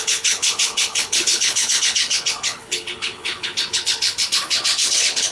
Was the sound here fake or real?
fake